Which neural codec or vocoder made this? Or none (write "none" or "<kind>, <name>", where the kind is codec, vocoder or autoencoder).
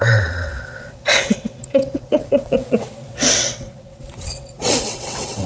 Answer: vocoder, WaveNeXt